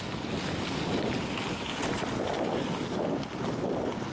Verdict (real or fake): real